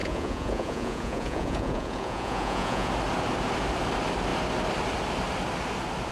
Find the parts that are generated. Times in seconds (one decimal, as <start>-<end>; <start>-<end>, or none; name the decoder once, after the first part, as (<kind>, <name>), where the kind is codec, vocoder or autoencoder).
0.0-2.9 (vocoder, Vocos)